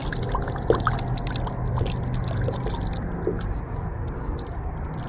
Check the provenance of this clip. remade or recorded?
recorded